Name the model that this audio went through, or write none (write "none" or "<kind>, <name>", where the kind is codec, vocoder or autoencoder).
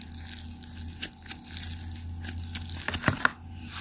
none